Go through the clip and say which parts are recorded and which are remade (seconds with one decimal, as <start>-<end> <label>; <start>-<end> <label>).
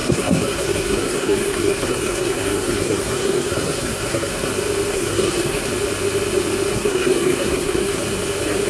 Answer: 0.0-4.5 remade; 4.5-4.9 recorded; 4.9-5.7 remade; 5.7-6.7 recorded; 6.7-8.0 remade; 8.0-8.7 recorded